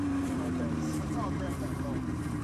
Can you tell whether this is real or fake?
fake